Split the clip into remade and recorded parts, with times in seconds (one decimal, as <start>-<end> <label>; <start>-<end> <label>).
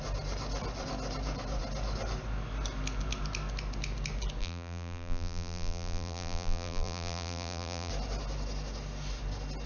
0.0-4.4 recorded; 4.4-7.9 remade; 7.9-9.7 recorded